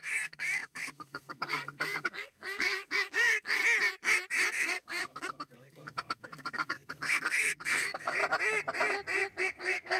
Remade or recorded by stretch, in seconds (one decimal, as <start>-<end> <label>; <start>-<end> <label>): 0.0-3.6 remade; 3.6-4.5 recorded; 4.5-8.2 remade; 8.2-9.4 recorded; 9.4-10.0 remade